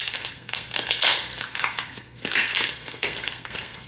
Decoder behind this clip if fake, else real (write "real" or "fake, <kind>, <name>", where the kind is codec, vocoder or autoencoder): fake, codec, SNAC